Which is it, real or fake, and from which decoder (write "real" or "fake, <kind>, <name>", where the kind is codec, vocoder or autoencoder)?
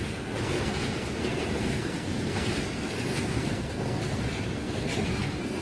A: fake, codec, SNAC